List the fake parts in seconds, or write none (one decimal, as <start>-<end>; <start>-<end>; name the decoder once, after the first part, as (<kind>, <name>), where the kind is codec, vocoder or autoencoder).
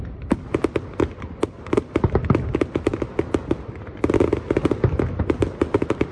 none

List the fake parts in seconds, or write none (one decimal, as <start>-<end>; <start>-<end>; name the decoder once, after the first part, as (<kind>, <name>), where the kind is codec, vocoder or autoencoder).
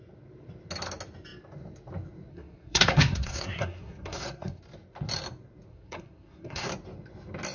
2.3-4.6 (codec, SNAC); 5.7-6.7